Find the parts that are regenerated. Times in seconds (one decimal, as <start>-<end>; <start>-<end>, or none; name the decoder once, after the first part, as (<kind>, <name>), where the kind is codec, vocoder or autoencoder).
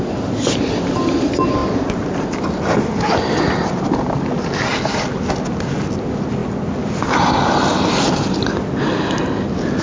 none